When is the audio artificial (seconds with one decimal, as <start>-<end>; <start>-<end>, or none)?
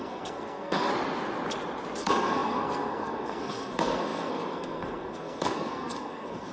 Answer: 0.0-0.9; 2.0-6.5